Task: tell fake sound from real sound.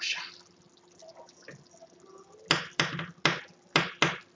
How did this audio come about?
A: real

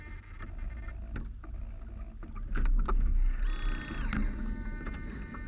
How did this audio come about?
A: real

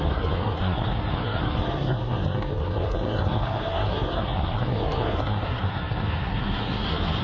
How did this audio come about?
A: fake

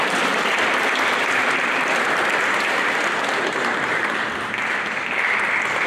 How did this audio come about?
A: fake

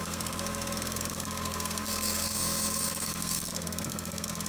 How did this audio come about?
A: fake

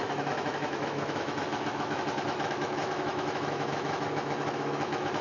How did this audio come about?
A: fake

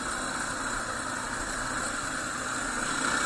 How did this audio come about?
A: real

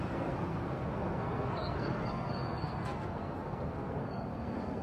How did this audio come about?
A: fake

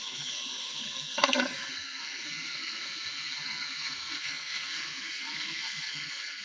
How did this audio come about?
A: fake